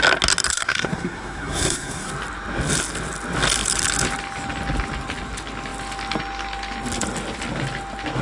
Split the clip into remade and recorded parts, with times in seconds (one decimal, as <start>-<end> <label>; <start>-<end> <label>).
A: 0.0-0.5 recorded; 0.5-2.1 remade; 2.1-8.2 recorded